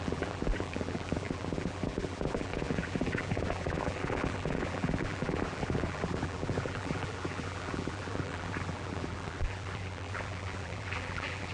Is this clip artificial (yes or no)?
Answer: yes